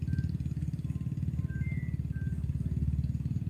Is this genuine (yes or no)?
yes